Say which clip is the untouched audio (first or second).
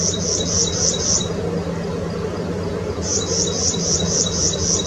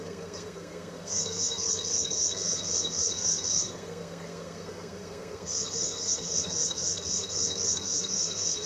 first